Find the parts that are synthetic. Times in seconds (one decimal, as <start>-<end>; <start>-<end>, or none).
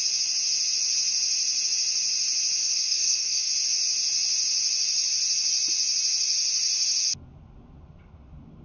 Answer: 2.6-3.5